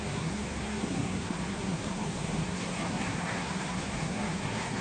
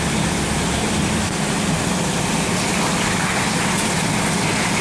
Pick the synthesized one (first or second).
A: first